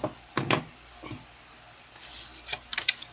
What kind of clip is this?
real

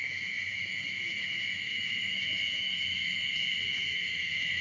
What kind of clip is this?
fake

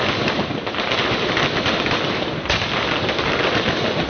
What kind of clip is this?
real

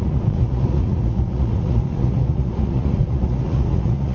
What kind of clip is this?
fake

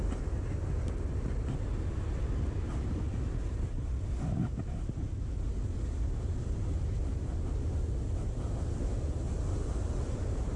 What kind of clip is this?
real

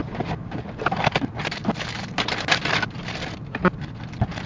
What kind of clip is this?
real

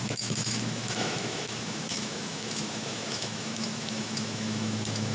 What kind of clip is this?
fake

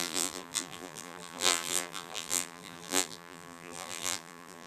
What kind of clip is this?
fake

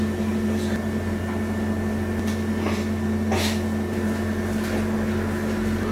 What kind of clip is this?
real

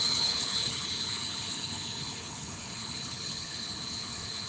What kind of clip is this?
fake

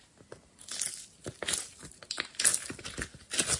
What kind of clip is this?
real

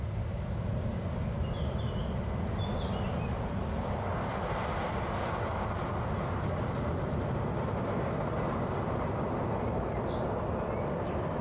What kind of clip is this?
real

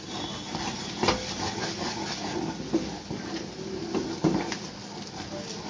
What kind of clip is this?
real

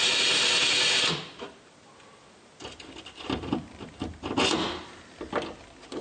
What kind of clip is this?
real